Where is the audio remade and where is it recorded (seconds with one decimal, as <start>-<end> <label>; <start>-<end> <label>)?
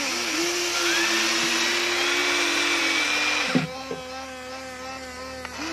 0.0-2.2 recorded; 2.2-2.8 remade; 2.8-5.7 recorded